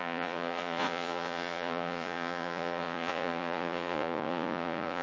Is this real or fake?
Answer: fake